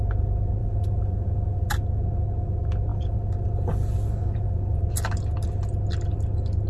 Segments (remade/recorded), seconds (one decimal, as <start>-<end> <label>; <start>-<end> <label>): 0.0-0.6 recorded; 0.6-1.7 remade; 1.7-2.9 recorded; 2.9-4.8 remade; 4.8-6.7 recorded